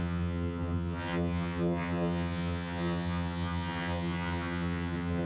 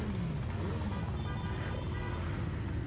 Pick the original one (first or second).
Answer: second